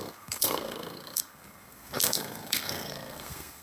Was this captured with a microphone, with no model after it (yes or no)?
no